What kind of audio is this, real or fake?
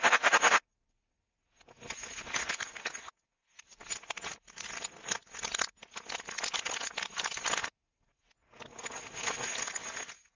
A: real